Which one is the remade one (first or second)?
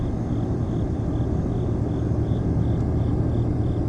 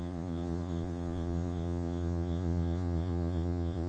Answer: second